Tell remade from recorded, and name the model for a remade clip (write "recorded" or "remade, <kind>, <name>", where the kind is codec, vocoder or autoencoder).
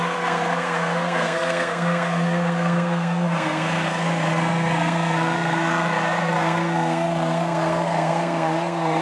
remade, codec, SNAC